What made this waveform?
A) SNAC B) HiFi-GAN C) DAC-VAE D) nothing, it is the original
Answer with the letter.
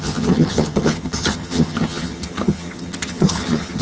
B